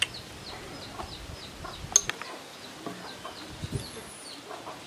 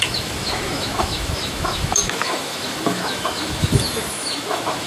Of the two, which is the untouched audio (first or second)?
first